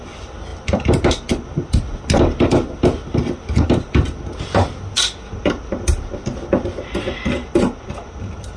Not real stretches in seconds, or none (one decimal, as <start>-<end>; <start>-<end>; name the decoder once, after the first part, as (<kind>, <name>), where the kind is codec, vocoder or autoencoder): none